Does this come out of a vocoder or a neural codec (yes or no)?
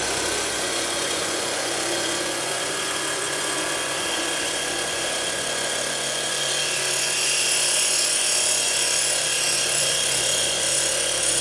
yes